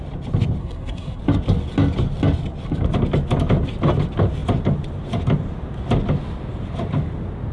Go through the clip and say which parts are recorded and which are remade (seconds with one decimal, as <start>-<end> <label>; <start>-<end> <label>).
0.0-0.6 recorded; 0.6-1.2 remade; 1.2-7.5 recorded